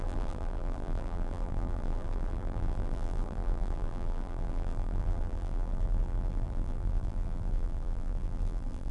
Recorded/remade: remade